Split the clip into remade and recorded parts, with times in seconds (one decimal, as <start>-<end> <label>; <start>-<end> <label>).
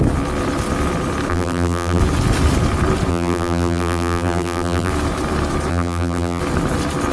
0.0-1.3 recorded; 1.3-2.0 remade; 2.0-3.1 recorded; 3.1-4.9 remade; 4.9-5.7 recorded; 5.7-6.4 remade; 6.4-7.1 recorded